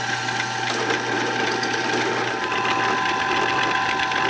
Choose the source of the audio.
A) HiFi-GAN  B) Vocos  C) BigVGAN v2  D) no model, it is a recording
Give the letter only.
D